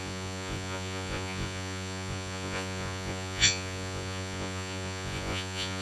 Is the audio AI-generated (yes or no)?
yes